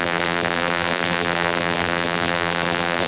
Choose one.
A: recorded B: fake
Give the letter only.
B